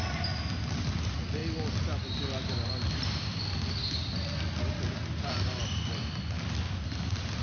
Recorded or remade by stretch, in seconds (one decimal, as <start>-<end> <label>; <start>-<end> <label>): 0.0-7.4 recorded